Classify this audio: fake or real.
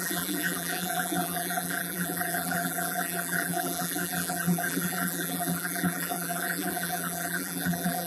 fake